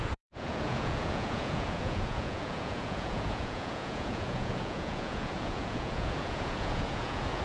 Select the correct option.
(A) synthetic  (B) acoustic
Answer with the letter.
A